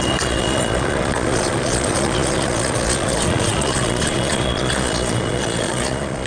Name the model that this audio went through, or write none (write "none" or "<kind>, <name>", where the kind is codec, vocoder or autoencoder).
vocoder, Vocos